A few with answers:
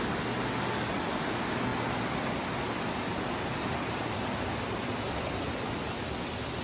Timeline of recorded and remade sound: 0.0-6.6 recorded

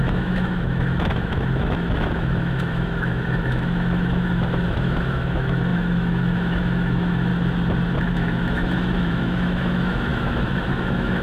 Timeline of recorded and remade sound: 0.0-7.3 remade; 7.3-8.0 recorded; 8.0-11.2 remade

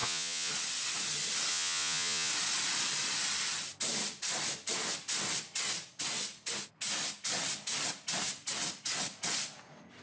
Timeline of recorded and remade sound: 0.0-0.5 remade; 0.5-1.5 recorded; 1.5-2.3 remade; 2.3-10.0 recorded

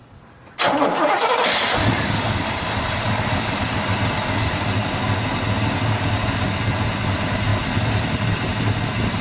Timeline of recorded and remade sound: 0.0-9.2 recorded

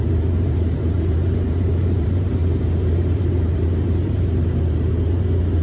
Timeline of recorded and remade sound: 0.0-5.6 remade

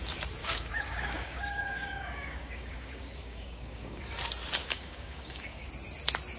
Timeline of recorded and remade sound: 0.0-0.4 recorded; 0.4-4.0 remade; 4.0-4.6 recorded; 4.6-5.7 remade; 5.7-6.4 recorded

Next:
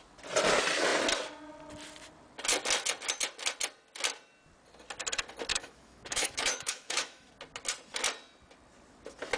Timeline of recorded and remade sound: 0.0-5.5 recorded; 5.5-7.3 remade; 7.3-9.4 recorded

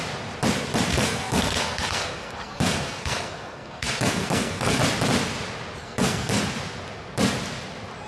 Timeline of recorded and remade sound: 0.0-0.9 recorded; 0.9-4.8 remade; 4.8-5.8 recorded; 5.8-6.4 remade; 6.4-8.1 recorded